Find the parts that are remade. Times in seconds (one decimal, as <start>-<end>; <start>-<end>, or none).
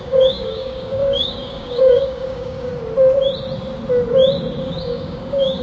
0.0-2.7; 4.6-5.6